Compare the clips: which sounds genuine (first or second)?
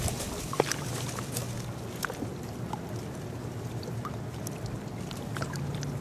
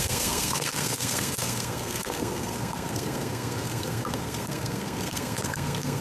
first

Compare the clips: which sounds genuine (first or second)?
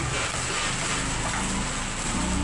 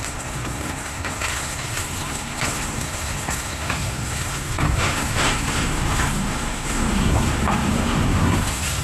first